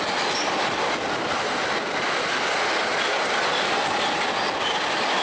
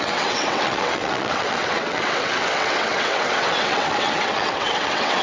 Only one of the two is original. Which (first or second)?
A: first